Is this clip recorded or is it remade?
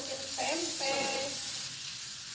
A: remade